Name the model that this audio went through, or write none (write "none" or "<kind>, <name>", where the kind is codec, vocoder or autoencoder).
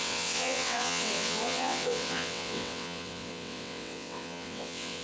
vocoder, WaveNeXt